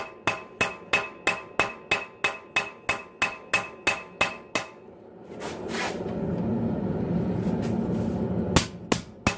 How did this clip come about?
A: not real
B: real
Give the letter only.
B